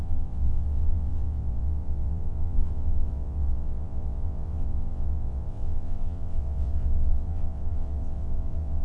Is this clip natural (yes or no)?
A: no